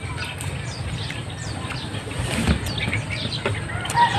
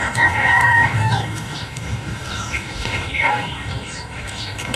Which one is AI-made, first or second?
second